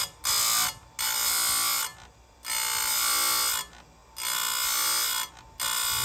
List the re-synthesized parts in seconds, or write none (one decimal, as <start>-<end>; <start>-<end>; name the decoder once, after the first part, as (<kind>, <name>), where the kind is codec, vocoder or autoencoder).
none